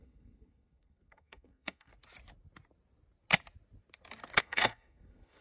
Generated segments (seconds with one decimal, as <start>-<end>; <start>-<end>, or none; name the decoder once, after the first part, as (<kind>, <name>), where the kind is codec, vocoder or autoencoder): 0.0-1.9 (codec, SNAC); 4.4-5.4